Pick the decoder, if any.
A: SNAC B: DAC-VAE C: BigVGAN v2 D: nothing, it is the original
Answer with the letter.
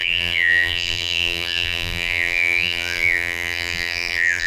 C